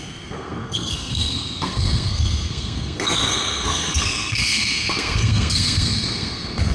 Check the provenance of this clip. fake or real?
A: fake